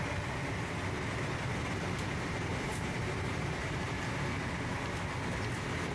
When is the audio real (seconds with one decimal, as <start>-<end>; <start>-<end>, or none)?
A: 0.0-2.5; 4.0-5.9